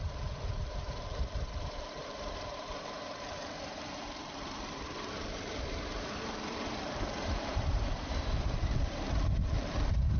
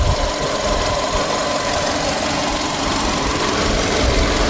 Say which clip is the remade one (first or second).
first